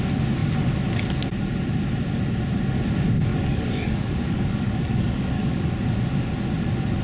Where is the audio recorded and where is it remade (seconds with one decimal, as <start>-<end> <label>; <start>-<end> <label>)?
0.0-3.3 recorded; 3.3-5.7 remade; 5.7-7.0 recorded